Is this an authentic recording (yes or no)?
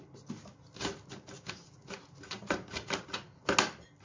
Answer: yes